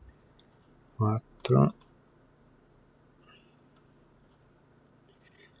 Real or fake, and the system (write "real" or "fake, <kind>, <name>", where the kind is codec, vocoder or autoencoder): real